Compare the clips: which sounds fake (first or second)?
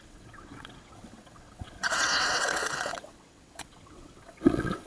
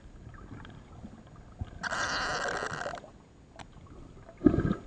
first